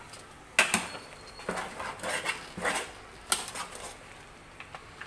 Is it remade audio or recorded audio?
recorded